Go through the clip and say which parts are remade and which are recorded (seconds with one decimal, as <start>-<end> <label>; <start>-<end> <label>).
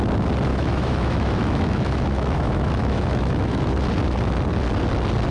0.0-0.5 recorded; 0.5-3.7 remade; 3.7-5.3 recorded